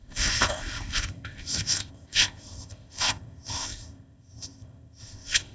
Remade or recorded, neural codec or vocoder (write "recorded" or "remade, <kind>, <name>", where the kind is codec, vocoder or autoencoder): remade, codec, ZipCodec